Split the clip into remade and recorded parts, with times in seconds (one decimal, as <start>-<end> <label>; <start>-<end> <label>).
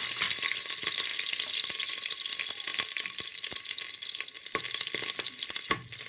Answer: 0.0-6.1 recorded